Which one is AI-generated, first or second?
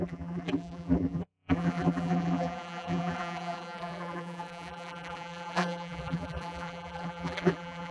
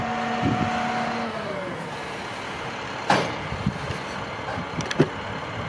first